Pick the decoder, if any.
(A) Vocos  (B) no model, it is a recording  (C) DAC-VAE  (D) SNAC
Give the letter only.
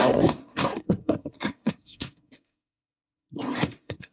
D